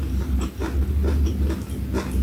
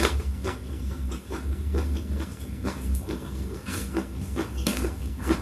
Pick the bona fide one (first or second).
first